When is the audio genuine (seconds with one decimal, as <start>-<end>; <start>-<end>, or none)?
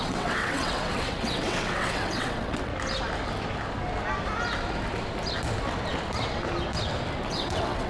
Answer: 2.7-7.3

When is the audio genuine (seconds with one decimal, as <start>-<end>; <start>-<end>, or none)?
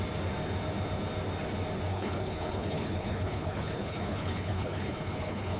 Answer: 0.0-1.9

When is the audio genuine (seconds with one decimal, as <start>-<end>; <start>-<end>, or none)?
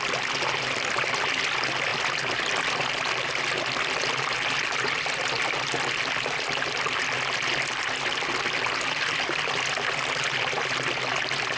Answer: 0.0-11.6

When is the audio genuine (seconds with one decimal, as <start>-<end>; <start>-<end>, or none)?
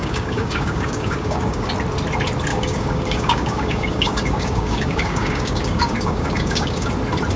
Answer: 1.7-2.5; 6.9-7.4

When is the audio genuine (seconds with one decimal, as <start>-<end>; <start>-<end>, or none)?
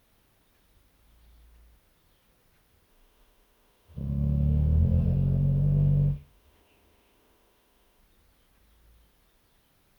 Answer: 0.0-2.9; 8.0-10.0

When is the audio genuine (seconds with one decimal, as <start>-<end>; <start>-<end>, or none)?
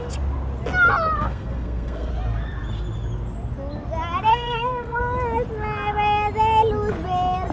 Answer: 0.0-1.2; 2.1-4.3; 5.0-7.5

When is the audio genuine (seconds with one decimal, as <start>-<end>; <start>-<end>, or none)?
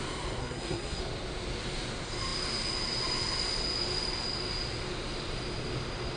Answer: 0.0-0.4; 1.0-6.2